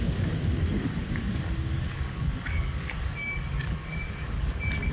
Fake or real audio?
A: fake